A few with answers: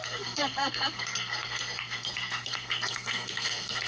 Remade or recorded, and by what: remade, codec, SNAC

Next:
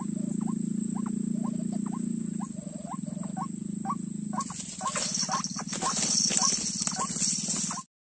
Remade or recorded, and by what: recorded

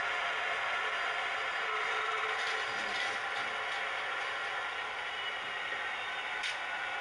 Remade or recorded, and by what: recorded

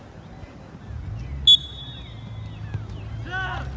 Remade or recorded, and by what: recorded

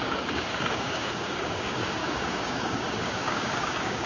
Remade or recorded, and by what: remade, codec, DAC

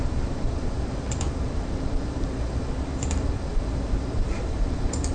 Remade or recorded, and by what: remade, vocoder, BigVGAN v2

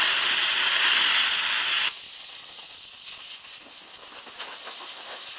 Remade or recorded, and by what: recorded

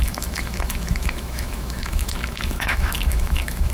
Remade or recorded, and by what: remade, autoencoder, DAC-VAE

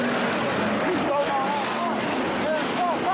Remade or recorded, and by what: recorded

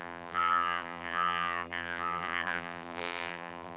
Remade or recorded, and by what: remade, vocoder, BigVGAN v2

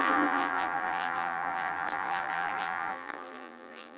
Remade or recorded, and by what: remade, vocoder, BigVGAN v2